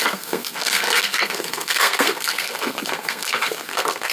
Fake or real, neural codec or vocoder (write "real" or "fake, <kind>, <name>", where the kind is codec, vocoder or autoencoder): fake, codec, SNAC